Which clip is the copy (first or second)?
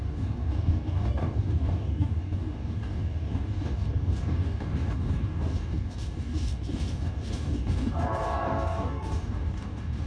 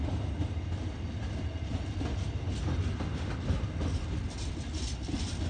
first